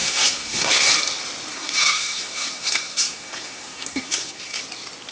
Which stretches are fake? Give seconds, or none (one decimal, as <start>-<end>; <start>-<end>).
0.0-0.9; 1.5-4.6